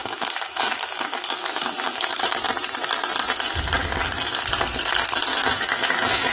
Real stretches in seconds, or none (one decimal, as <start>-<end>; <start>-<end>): 2.4-5.3